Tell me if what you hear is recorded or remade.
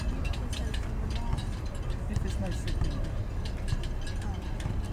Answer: recorded